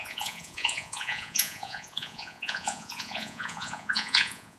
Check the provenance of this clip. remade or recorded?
remade